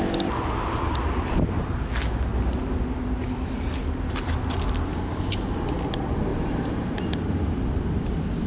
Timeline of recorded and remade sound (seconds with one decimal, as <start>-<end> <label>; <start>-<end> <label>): 0.0-6.3 recorded; 6.3-7.8 remade; 7.8-8.5 recorded